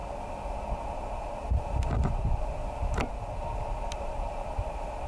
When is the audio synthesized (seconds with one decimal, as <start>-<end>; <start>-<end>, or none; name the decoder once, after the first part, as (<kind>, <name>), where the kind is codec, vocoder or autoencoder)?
none